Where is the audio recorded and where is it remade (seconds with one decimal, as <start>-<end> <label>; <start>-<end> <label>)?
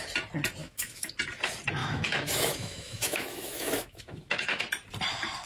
0.0-0.6 recorded; 0.6-1.1 remade; 1.1-1.8 recorded; 1.8-4.6 remade; 4.6-5.5 recorded